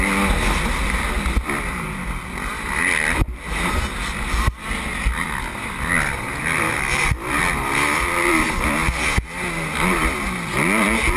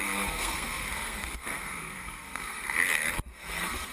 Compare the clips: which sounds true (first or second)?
first